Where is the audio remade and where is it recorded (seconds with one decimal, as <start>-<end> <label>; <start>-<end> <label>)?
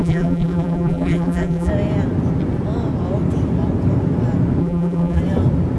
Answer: 0.0-1.7 remade; 1.7-4.6 recorded; 4.6-5.2 remade; 5.2-5.8 recorded